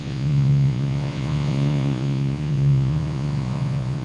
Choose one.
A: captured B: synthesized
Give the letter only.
B